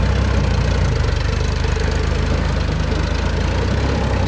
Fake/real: real